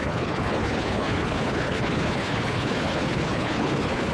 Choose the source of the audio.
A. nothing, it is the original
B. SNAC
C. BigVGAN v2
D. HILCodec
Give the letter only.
D